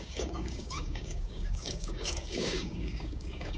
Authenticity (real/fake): fake